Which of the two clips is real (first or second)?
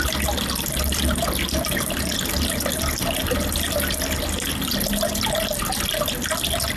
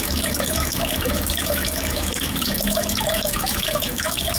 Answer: first